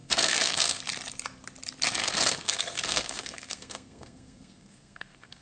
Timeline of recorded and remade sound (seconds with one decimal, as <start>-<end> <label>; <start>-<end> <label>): 0.0-0.8 remade; 0.8-2.0 recorded; 2.0-5.4 remade